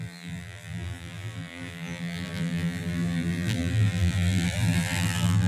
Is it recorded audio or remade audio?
remade